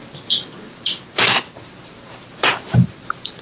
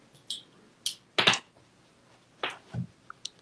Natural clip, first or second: second